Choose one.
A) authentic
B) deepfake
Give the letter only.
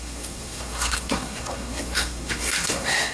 B